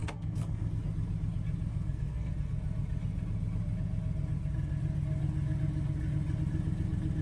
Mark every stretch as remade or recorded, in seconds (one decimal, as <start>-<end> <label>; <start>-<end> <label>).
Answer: 0.0-0.7 remade; 0.7-1.7 recorded; 1.7-2.3 remade; 2.3-7.2 recorded